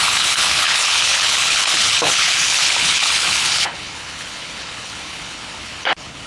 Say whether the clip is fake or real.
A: fake